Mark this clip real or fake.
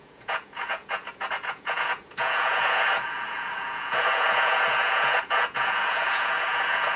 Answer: fake